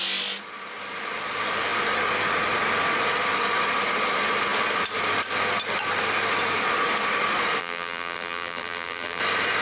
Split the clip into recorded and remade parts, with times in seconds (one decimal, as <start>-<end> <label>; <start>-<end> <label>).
0.0-7.6 recorded; 7.6-9.2 remade; 9.2-9.6 recorded